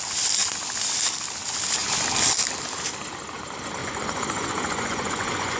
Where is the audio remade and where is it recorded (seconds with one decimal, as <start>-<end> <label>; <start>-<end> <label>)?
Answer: 0.0-3.8 recorded; 3.8-5.6 remade